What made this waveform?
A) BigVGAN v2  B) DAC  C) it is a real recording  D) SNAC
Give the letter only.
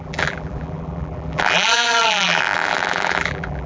A